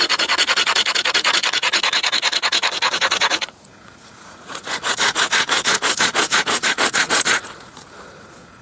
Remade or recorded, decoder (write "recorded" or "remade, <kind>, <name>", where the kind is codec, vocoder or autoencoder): remade, vocoder, Vocos